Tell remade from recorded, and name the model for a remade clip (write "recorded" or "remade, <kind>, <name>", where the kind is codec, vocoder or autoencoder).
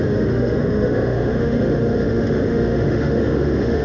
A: remade, autoencoder, DAC-VAE